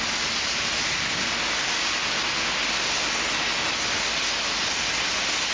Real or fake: real